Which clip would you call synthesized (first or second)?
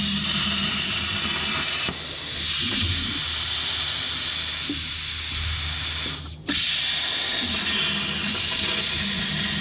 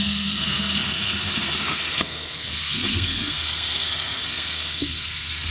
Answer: second